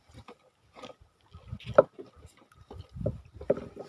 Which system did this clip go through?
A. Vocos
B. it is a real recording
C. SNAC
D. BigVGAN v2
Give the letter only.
B